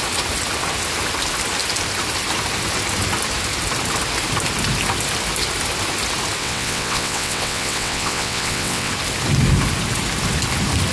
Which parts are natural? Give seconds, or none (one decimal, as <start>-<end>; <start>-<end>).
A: 0.0-6.4; 8.9-10.9